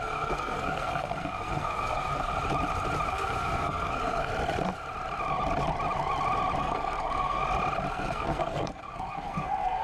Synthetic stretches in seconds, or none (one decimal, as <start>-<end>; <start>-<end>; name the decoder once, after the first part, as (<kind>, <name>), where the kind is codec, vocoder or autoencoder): 0.0-2.3 (codec, SNAC); 3.1-4.3; 6.6-7.4; 7.9-9.8